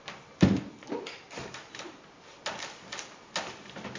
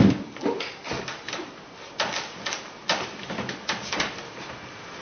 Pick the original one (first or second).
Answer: second